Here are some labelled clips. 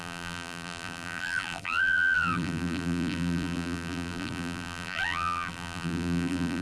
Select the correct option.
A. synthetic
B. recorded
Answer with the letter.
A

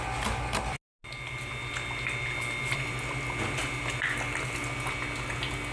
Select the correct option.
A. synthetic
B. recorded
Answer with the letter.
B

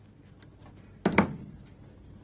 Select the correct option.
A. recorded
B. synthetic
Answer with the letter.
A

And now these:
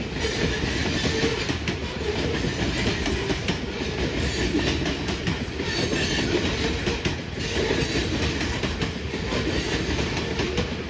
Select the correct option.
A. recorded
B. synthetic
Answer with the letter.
A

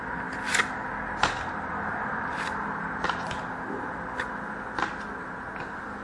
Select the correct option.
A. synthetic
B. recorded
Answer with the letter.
B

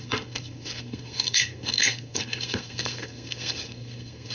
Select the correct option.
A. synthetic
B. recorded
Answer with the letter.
A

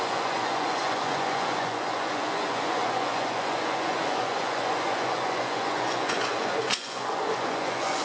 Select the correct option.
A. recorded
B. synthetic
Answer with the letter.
B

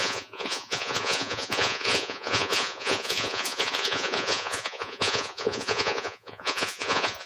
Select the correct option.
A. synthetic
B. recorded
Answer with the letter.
A